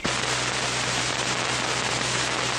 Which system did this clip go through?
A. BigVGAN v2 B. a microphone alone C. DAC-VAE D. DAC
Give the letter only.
B